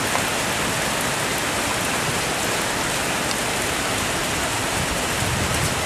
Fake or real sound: real